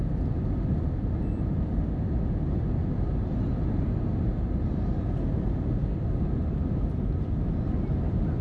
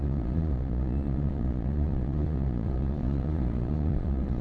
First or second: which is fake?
second